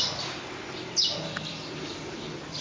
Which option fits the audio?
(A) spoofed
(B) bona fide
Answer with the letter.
B